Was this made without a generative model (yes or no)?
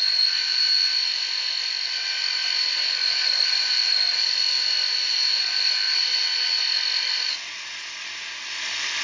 no